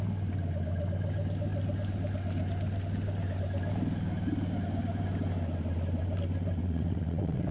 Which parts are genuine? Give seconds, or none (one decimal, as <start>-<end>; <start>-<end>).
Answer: 0.0-6.6